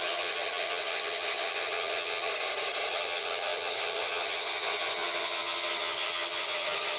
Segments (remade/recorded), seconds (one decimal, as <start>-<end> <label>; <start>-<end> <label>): 0.0-2.3 remade; 2.3-2.9 recorded; 2.9-7.0 remade